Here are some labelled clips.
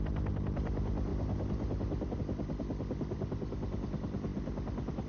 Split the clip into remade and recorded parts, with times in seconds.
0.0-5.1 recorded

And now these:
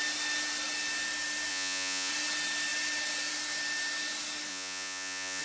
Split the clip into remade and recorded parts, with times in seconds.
0.0-1.5 recorded; 1.5-2.1 remade; 2.1-4.5 recorded; 4.5-5.4 remade

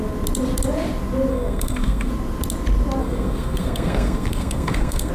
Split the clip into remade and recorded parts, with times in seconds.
0.0-1.3 recorded; 1.3-2.1 remade; 2.1-3.0 recorded; 3.0-5.1 remade

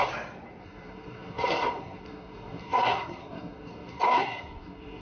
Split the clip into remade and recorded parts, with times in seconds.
0.0-0.6 recorded; 0.6-5.0 remade

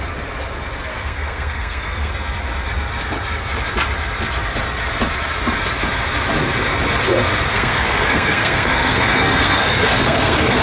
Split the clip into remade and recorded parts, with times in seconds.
0.0-0.9 recorded; 0.9-2.1 remade; 2.1-7.5 recorded; 7.5-10.6 remade

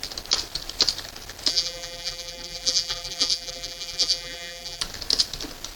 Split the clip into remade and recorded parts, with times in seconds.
0.0-1.5 recorded; 1.5-4.8 remade; 4.8-5.8 recorded

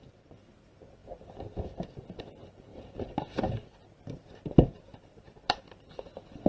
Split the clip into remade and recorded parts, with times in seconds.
0.0-2.7 recorded; 2.7-3.9 remade; 3.9-6.5 recorded

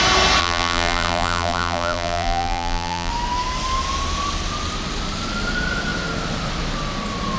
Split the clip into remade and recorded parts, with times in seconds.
0.0-0.4 recorded; 0.4-3.1 remade; 3.1-7.4 recorded